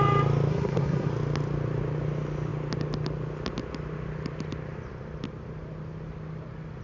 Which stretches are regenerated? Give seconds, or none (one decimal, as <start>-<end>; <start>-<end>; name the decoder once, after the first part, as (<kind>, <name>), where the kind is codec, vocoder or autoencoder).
0.5-1.1 (codec, SNAC)